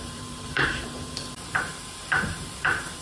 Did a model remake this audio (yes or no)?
yes